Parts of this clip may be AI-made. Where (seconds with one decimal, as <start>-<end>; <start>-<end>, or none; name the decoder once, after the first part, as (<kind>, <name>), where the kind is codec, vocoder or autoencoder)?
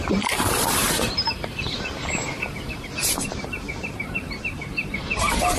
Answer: 0.0-5.6 (vocoder, BigVGAN v2)